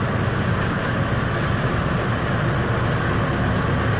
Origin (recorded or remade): recorded